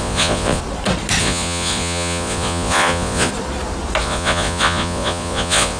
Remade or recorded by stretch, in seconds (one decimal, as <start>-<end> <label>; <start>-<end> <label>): 0.0-0.6 remade; 0.6-1.2 recorded; 1.2-3.3 remade; 3.3-4.0 recorded; 4.0-5.8 remade